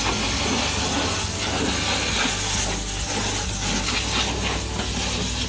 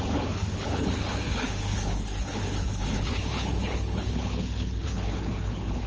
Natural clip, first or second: first